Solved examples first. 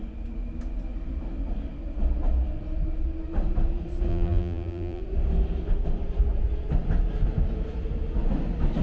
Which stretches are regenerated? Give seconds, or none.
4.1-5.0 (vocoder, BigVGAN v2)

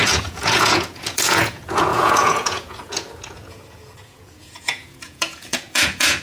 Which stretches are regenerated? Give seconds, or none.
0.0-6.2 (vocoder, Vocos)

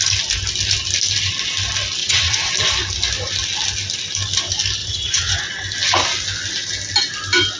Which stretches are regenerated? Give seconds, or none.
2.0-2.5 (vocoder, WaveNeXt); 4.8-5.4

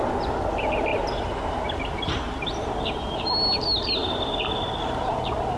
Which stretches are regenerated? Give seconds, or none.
0.9-3.3 (vocoder, BigVGAN v2); 4.0-5.1

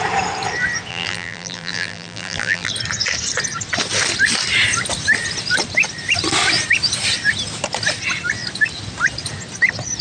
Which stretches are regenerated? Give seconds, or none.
0.9-2.7 (vocoder, BigVGAN v2)

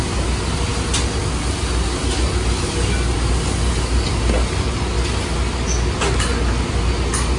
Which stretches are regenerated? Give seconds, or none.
none